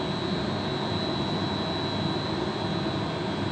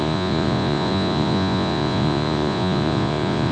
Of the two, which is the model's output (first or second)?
second